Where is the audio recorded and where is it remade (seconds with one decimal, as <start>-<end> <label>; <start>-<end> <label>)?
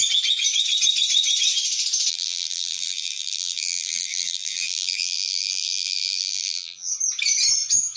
0.0-2.1 recorded; 2.1-6.9 remade; 6.9-8.0 recorded